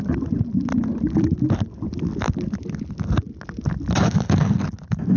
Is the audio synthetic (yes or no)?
no